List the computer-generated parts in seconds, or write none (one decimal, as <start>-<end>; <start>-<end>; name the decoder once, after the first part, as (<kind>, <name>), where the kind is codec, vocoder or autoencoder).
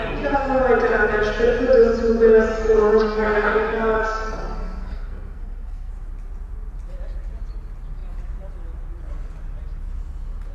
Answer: 0.0-0.6 (codec, SNAC); 2.5-5.9